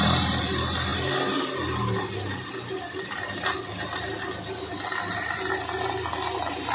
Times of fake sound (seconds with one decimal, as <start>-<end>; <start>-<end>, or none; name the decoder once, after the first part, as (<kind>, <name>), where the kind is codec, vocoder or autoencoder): none